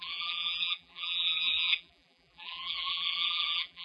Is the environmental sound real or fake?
fake